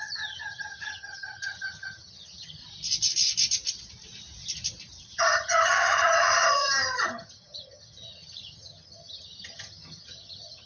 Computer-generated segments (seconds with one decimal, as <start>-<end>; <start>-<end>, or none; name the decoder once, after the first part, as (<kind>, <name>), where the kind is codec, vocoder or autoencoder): 0.0-2.6 (vocoder, HiFi-GAN); 5.2-10.7